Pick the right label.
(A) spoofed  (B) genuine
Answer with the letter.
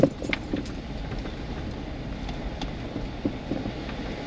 B